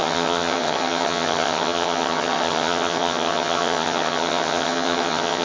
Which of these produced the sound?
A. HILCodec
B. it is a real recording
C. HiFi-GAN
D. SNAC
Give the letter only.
C